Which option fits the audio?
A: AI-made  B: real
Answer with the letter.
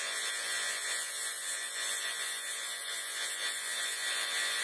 A